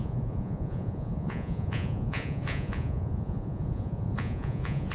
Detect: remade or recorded remade